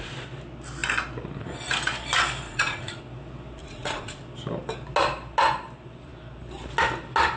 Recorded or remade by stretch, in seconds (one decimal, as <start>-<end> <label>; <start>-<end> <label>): 0.0-2.5 recorded; 2.5-3.0 remade; 3.0-3.6 recorded; 3.6-4.2 remade; 4.2-7.4 recorded